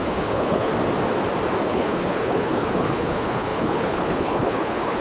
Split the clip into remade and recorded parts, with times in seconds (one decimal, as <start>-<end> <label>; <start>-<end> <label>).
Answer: 0.0-0.7 remade; 0.7-1.6 recorded; 1.6-5.0 remade